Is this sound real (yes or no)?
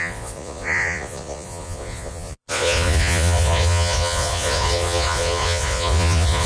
no